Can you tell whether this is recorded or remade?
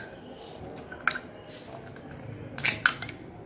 recorded